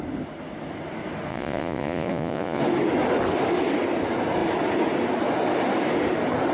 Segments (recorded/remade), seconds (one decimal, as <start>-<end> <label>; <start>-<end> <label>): 0.0-1.3 recorded; 1.3-2.6 remade; 2.6-6.5 recorded